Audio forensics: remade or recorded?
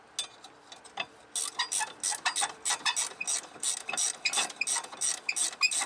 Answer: recorded